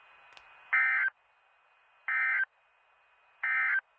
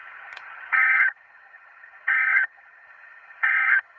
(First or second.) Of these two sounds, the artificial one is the second